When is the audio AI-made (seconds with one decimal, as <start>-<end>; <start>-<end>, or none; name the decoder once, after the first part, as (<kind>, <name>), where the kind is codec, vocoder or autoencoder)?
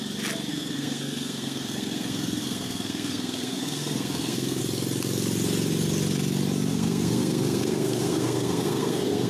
0.5-4.6 (codec, SNAC); 6.7-9.3